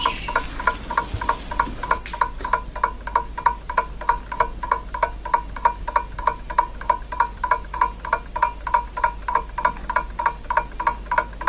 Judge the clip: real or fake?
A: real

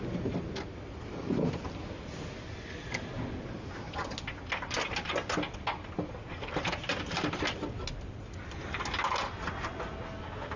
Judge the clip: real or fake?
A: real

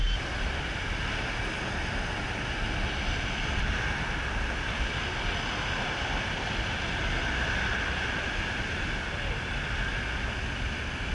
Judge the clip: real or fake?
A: real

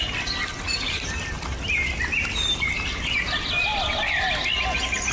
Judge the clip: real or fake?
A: real